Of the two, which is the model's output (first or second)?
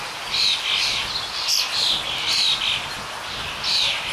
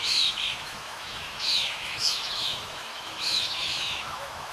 second